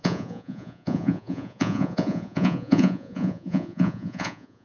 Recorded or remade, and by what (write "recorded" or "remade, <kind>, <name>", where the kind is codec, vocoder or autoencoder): remade, vocoder, Vocos